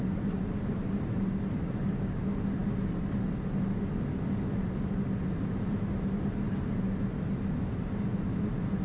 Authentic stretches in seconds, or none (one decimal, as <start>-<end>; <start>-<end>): 0.0-8.8